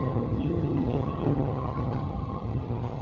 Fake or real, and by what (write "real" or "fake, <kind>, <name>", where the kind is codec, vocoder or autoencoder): fake, vocoder, HiFi-GAN